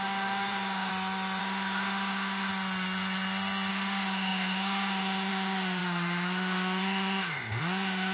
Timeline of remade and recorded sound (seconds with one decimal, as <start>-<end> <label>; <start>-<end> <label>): 0.0-0.9 remade; 0.9-1.4 recorded; 1.4-2.5 remade; 2.5-3.7 recorded; 3.7-8.1 remade